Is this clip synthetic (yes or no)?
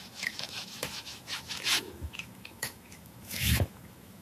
yes